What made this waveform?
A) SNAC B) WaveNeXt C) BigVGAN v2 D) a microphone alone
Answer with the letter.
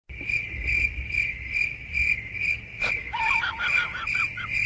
D